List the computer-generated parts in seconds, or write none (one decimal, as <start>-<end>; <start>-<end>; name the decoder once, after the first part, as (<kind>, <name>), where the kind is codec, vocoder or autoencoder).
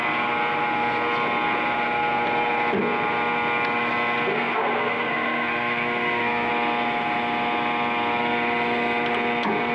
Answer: 4.3-6.5 (codec, SNAC)